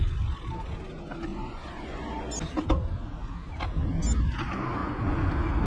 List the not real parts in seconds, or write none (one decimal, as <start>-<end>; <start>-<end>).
1.3-2.1; 4.8-5.3